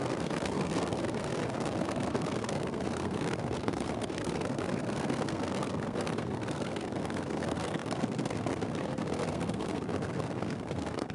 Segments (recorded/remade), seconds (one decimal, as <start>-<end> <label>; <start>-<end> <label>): 0.0-11.1 remade